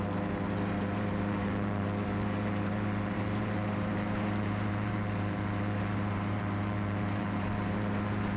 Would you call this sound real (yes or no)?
no